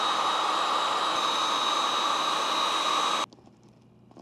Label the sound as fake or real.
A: real